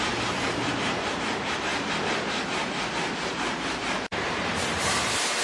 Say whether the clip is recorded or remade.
remade